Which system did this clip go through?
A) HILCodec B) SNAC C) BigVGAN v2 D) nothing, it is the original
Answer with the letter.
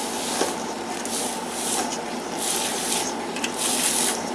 D